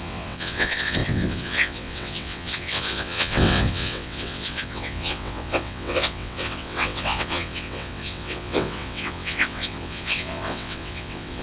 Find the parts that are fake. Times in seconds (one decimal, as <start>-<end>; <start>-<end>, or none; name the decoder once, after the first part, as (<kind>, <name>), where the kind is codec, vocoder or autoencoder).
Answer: 0.0-11.4 (vocoder, WaveNeXt)